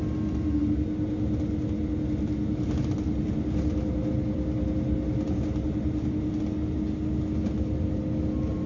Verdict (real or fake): real